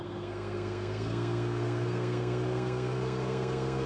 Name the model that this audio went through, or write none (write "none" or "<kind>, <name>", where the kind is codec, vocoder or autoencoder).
codec, SNAC